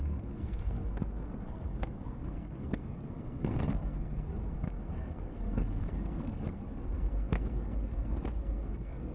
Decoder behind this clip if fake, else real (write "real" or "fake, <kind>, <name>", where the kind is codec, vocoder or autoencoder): fake, codec, SNAC